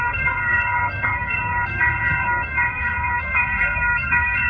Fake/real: fake